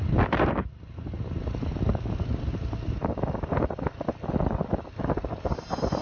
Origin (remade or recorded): recorded